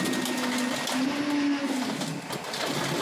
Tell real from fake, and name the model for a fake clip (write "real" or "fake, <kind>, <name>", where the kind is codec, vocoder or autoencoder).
real